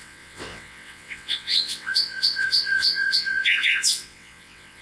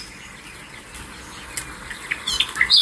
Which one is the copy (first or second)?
first